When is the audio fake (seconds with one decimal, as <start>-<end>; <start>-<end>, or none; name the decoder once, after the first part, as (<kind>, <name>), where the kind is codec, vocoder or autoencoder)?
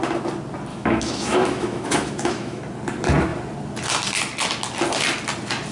0.7-2.6 (autoencoder, DAC-VAE)